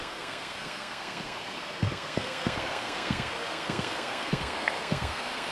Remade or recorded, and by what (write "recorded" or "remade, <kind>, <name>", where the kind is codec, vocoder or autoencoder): remade, codec, SNAC